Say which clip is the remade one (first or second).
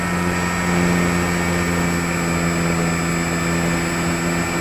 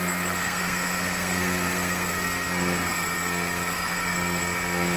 second